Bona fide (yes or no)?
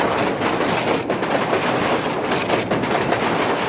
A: yes